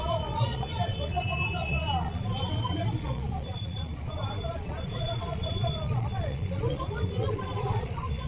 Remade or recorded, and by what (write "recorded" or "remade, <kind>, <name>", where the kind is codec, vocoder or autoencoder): remade, vocoder, Vocos